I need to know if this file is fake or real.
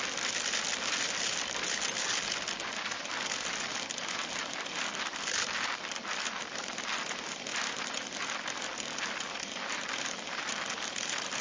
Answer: real